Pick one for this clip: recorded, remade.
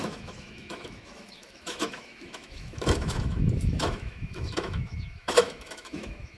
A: remade